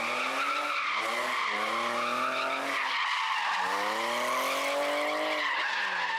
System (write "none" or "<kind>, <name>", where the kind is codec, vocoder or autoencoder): none